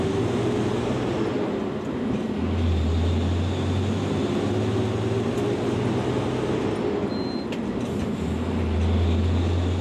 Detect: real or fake real